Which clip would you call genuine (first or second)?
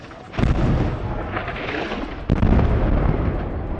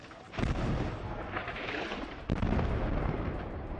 first